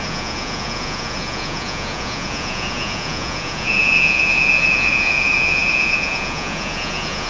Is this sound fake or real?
fake